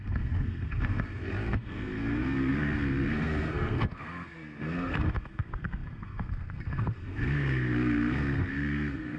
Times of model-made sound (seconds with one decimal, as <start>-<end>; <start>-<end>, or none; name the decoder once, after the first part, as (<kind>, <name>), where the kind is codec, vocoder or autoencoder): 0.0-9.2 (codec, SNAC)

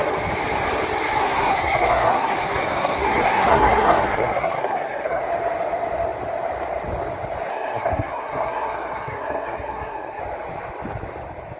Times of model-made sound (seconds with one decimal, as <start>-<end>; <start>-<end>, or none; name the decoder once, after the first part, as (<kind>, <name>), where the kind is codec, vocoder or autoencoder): 1.2-5.2 (codec, SNAC); 7.5-10.2